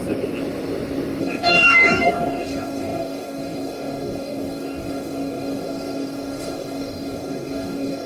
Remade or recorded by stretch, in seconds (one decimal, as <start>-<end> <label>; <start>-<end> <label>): 0.0-1.2 recorded; 1.2-8.1 remade